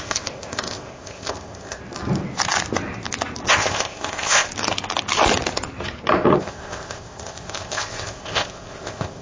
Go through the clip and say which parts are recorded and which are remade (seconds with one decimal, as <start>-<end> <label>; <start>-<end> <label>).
0.0-1.8 remade; 1.8-3.5 recorded; 3.5-4.5 remade; 4.5-6.4 recorded; 6.4-9.2 remade